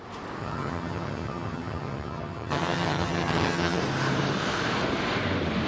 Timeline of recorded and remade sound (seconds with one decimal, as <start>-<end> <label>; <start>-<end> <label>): 0.0-0.4 recorded; 0.4-3.8 remade; 3.8-5.7 recorded